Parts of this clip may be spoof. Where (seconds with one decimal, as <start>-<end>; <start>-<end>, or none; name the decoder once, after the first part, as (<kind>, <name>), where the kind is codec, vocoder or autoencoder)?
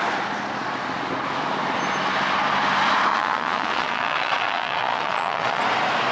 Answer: 3.1-5.6 (vocoder, Vocos)